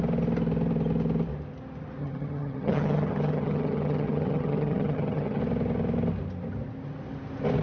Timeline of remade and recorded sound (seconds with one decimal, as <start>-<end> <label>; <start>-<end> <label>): 0.0-2.0 recorded; 2.0-5.4 remade; 5.4-7.6 recorded